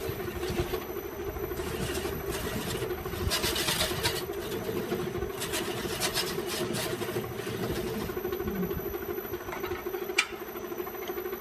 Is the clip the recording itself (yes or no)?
yes